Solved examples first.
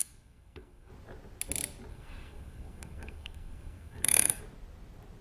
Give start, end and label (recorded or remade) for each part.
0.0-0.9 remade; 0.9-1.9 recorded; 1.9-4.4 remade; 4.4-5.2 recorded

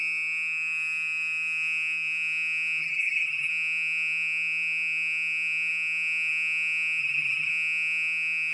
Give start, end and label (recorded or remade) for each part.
0.0-2.8 recorded; 2.8-3.5 remade; 3.5-7.0 recorded; 7.0-7.5 remade; 7.5-8.5 recorded